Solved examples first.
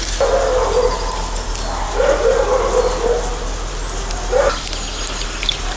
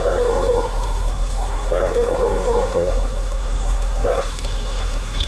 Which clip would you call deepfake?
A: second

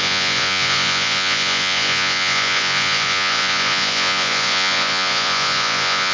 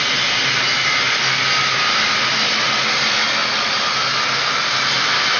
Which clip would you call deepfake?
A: first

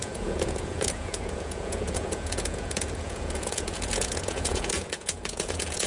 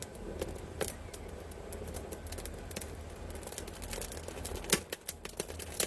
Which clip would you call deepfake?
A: first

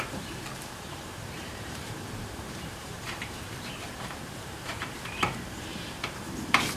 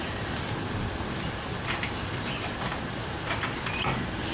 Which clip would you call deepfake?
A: first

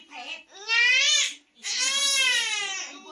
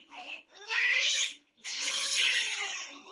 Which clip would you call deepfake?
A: second